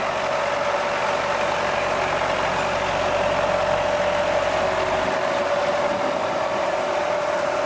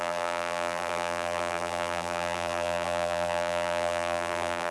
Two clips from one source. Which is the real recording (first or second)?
first